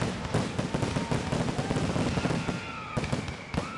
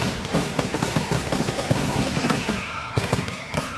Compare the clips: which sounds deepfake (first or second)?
second